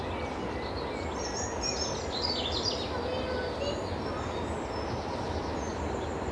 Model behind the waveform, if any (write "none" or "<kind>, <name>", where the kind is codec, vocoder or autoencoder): none